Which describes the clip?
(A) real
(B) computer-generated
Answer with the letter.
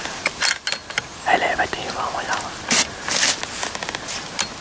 A